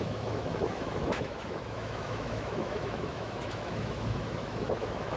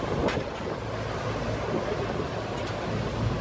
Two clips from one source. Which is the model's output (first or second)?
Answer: first